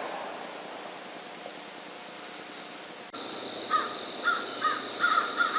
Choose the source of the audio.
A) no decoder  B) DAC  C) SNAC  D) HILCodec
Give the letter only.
A